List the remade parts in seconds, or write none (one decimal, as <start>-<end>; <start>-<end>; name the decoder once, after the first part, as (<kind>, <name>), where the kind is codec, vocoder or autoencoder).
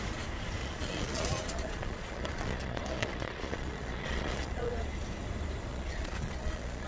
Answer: 0.6-4.7 (vocoder, Vocos); 5.7-6.9